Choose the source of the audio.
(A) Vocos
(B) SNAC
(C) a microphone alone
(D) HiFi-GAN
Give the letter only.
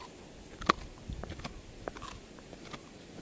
C